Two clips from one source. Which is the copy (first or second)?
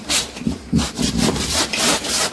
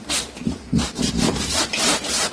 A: first